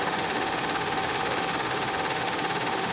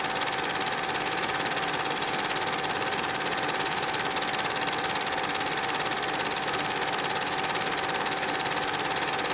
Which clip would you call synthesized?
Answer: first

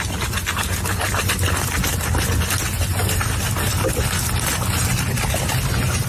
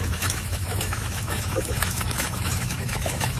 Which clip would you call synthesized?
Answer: second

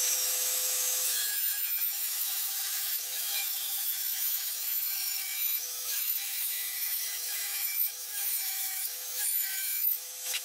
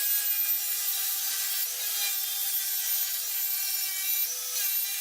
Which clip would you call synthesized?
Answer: first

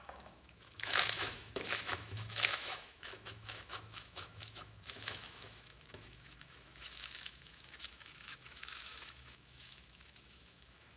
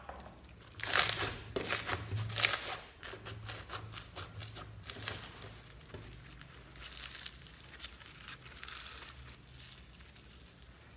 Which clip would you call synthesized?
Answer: first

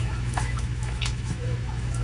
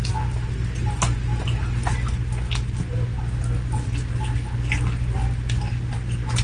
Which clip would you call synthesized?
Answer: first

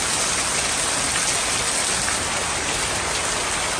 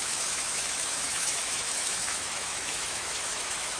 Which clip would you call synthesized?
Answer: second